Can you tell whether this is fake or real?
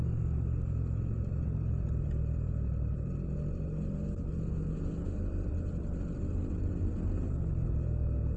real